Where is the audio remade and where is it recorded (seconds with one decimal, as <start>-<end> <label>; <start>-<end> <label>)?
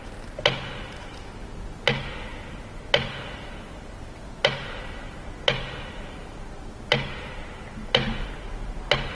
0.0-9.1 recorded